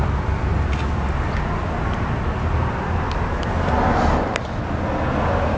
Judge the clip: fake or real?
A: real